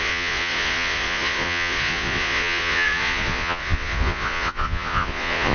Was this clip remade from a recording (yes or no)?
yes